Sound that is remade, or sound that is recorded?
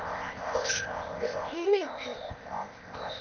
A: remade